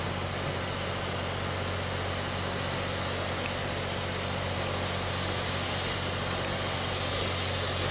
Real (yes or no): yes